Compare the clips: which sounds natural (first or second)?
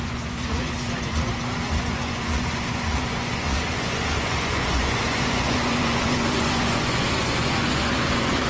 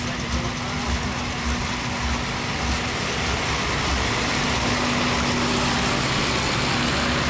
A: second